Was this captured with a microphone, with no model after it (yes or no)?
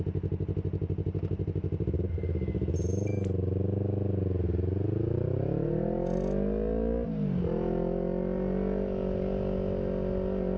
yes